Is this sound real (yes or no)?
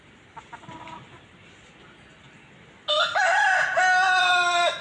yes